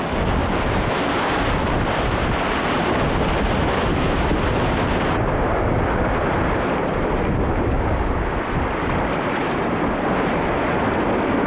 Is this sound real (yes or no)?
yes